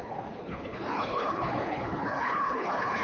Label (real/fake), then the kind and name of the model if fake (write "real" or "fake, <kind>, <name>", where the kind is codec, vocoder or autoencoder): fake, codec, HILCodec